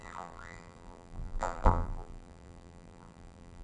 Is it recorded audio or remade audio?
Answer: remade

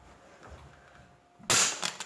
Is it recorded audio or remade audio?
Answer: recorded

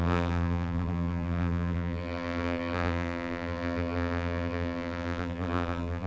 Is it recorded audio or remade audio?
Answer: remade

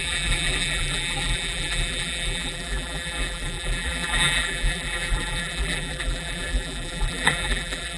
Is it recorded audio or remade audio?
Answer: remade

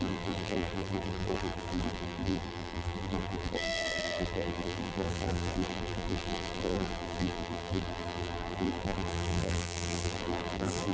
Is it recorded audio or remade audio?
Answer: remade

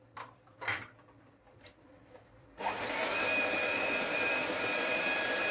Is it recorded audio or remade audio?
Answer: remade